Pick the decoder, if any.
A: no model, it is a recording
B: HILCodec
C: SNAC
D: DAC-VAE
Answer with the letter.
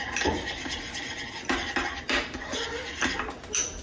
A